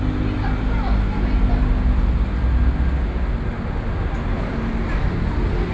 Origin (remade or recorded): recorded